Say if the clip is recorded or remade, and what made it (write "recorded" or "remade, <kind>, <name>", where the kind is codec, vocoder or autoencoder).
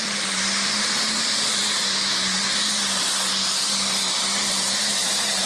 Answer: remade, vocoder, BigVGAN v2